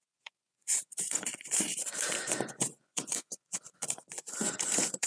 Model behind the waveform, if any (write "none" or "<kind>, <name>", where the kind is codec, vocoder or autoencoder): vocoder, Vocos